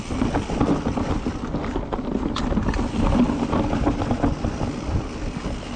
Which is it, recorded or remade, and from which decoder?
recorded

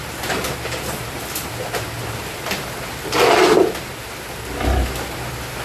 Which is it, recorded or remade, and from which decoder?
recorded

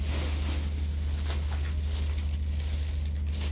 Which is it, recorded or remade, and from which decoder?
recorded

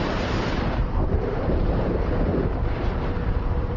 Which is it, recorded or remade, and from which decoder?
remade, vocoder, BigVGAN v2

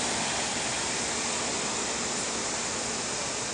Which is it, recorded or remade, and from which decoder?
remade, vocoder, BigVGAN v2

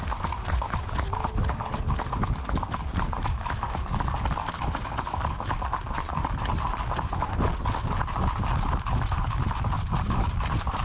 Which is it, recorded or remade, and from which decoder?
recorded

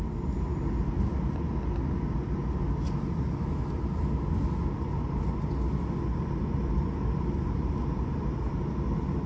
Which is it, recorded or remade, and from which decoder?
recorded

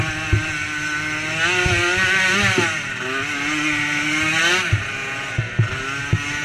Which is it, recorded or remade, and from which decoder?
recorded